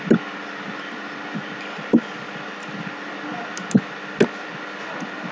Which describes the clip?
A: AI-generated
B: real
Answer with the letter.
B